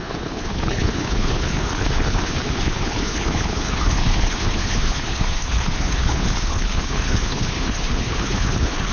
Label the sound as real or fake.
fake